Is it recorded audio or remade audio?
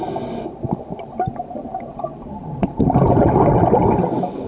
recorded